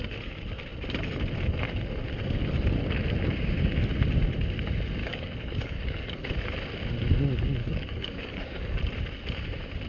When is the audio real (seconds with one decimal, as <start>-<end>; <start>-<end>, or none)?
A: 0.0-5.0; 6.3-7.6; 8.8-9.9